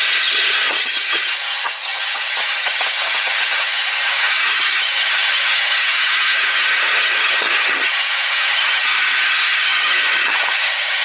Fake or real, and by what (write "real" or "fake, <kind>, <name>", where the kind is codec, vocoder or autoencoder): fake, vocoder, HiFi-GAN